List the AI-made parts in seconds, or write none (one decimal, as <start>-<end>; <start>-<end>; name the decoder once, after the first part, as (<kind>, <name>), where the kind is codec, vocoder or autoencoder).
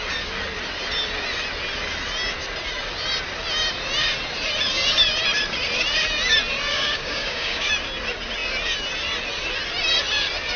6.7-7.7 (codec, DAC)